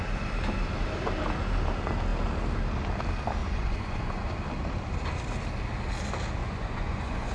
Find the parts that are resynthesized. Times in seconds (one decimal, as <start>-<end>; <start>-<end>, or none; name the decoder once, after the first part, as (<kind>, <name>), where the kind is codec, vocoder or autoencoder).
3.4-4.3 (vocoder, Vocos); 6.4-7.3